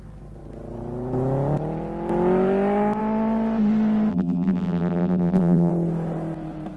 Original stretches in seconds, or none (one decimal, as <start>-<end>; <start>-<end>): 0.0-4.1; 5.7-6.8